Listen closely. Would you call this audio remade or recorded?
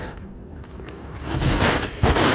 remade